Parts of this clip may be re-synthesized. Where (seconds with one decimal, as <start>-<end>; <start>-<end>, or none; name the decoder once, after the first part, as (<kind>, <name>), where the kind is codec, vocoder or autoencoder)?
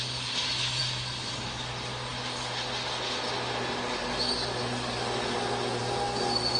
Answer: none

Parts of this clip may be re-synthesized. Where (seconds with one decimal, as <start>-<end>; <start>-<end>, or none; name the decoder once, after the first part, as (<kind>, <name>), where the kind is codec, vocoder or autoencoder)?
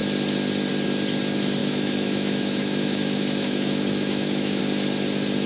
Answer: 1.6-4.6 (autoencoder, DAC-VAE)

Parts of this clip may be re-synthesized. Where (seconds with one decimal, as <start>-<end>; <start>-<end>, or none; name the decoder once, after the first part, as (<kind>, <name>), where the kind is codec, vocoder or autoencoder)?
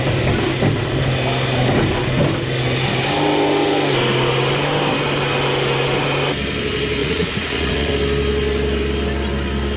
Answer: 7.0-7.9 (vocoder, Vocos)